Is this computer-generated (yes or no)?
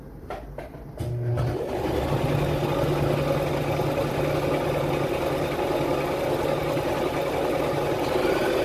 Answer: no